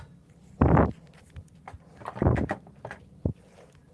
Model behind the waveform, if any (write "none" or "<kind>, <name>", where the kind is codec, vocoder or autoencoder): none